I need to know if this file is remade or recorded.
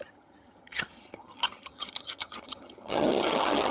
remade